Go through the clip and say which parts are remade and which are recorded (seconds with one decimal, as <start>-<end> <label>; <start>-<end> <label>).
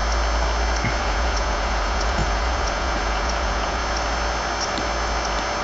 0.0-1.0 recorded; 1.0-3.8 remade; 3.8-5.6 recorded